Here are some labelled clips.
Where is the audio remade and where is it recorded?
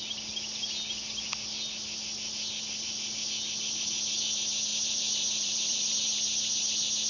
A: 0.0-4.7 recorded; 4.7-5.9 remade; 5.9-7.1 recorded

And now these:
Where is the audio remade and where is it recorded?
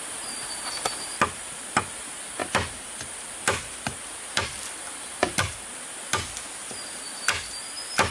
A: 0.0-2.4 remade; 2.4-4.3 recorded; 4.3-6.1 remade; 6.1-7.6 recorded; 7.6-8.1 remade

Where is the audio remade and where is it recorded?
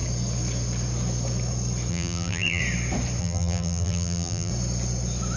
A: 0.0-1.9 recorded; 1.9-2.6 remade; 2.6-3.2 recorded; 3.2-4.5 remade; 4.5-5.4 recorded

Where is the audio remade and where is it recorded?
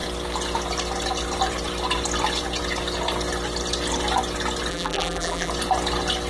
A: 0.0-4.7 recorded; 4.7-5.5 remade; 5.5-6.3 recorded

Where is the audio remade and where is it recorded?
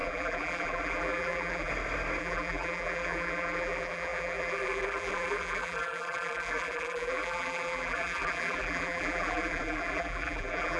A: 0.0-1.7 remade; 1.7-2.2 recorded; 2.2-10.8 remade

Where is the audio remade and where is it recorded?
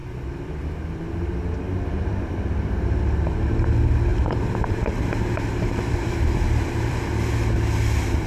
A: 0.0-4.1 recorded; 4.1-7.0 remade; 7.0-8.3 recorded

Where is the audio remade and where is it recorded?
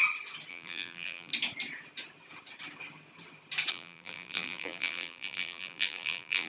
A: 0.0-0.5 recorded; 0.5-1.3 remade; 1.3-3.7 recorded; 3.7-6.5 remade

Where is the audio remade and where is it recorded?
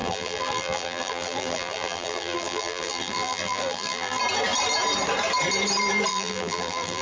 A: 0.0-4.2 remade; 4.2-6.1 recorded; 6.1-7.0 remade